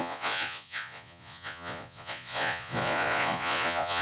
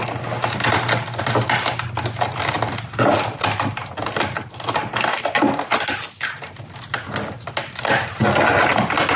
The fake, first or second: first